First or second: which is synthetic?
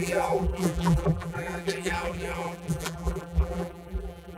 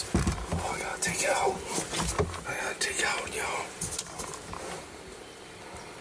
first